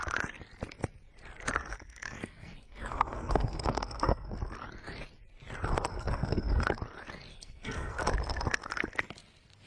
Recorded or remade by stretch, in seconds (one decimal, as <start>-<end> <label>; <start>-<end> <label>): 0.0-1.7 recorded; 1.7-4.4 remade; 4.4-5.9 recorded; 5.9-6.6 remade; 6.6-7.3 recorded; 7.3-8.0 remade; 8.0-9.7 recorded